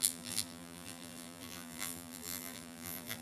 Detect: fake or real fake